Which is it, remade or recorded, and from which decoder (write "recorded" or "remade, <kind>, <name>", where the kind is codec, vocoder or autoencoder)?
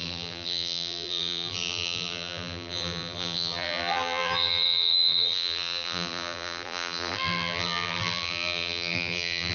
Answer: remade, vocoder, BigVGAN v2